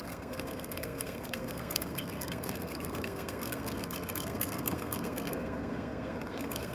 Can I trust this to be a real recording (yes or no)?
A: no